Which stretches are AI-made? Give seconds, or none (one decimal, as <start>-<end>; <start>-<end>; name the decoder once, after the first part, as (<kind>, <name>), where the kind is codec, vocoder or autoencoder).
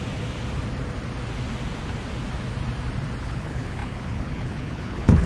3.2-5.3 (codec, HILCodec)